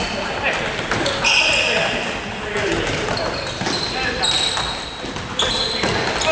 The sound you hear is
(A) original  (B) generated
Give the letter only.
A